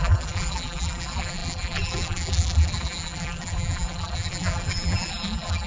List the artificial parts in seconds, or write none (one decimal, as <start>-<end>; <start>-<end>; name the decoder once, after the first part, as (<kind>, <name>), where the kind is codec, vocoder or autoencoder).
0.0-5.7 (vocoder, BigVGAN v2)